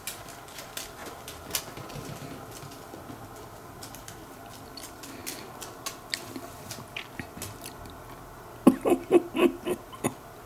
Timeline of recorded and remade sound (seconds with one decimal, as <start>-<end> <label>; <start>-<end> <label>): 0.0-10.5 recorded